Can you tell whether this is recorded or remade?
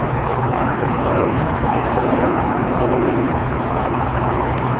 remade